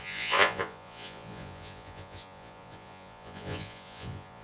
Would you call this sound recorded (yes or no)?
no